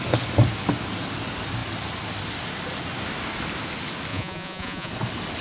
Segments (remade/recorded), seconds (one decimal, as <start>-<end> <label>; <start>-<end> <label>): 0.0-4.1 recorded; 4.1-4.9 remade; 4.9-5.4 recorded

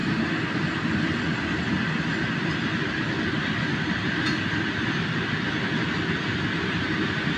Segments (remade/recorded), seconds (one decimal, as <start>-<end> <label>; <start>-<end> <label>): 0.0-7.4 recorded

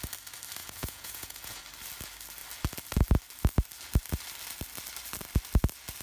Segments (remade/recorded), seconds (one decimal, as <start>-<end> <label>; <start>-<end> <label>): 0.0-0.6 recorded; 0.6-1.6 remade; 1.6-6.0 recorded

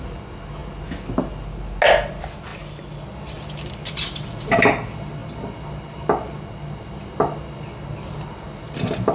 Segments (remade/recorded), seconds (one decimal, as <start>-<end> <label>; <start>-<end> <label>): 0.0-9.1 recorded

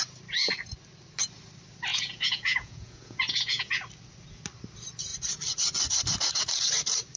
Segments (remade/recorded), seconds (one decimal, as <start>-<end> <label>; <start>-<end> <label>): 0.0-1.9 recorded; 1.9-3.7 remade; 3.7-7.2 recorded